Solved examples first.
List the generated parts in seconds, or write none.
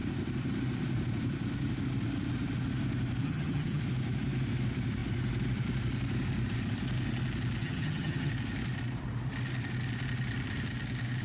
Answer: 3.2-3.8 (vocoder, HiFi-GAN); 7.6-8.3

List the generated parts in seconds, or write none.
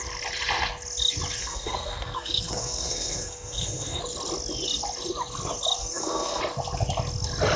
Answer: 1.4-4.0 (codec, SNAC); 5.8-6.4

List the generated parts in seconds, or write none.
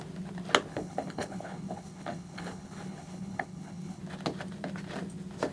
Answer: 0.7-4.0 (codec, HILCodec)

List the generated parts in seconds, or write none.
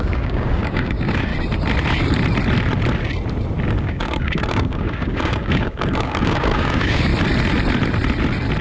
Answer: 0.0-1.3 (codec, DAC); 3.8-7.1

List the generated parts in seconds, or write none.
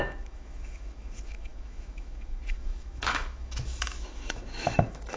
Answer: 0.0-5.2 (autoencoder, DAC-VAE)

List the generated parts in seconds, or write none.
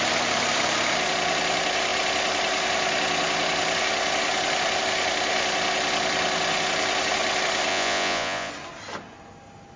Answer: 7.7-8.5 (vocoder, Vocos)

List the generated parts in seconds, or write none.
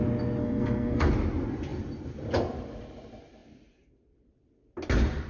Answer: 0.4-1.1 (codec, SNAC)